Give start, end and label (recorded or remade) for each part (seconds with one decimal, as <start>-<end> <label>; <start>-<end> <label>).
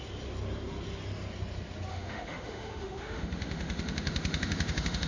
0.0-1.9 recorded; 1.9-5.1 remade